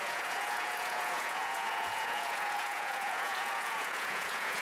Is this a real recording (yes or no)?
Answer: no